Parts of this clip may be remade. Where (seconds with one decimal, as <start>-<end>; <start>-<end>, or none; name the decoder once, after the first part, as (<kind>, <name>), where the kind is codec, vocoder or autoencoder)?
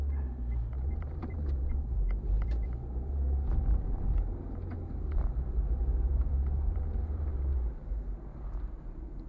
0.0-4.3 (vocoder, BigVGAN v2); 5.0-9.3